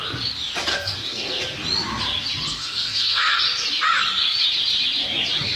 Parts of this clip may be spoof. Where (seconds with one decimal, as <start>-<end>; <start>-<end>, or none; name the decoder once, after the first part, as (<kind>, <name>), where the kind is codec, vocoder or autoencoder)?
0.7-1.4 (codec, SNAC); 2.5-3.4